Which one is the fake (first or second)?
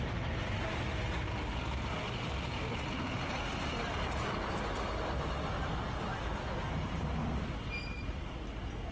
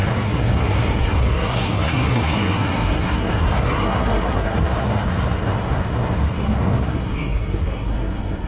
second